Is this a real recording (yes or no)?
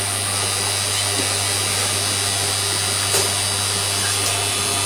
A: yes